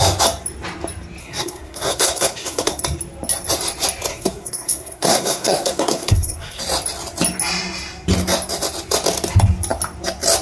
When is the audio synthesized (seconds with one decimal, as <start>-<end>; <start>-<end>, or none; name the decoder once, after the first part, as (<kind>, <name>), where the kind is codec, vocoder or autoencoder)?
1.2-2.8 (codec, SNAC); 4.1-6.6